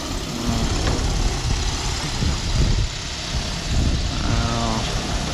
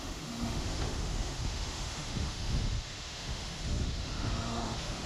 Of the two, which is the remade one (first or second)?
second